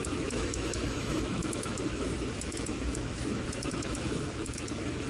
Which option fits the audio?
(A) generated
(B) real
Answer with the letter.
A